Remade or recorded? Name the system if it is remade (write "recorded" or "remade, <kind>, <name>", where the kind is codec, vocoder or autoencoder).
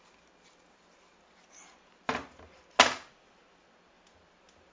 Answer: recorded